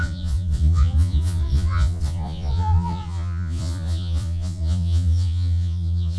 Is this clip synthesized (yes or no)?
yes